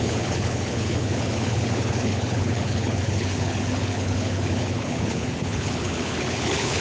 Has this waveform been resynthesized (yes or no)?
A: yes